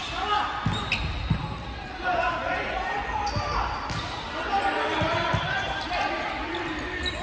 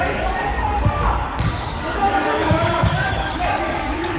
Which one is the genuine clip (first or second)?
first